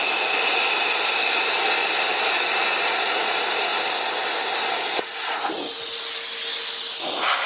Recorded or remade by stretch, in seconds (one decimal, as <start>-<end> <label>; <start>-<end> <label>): 0.0-7.5 recorded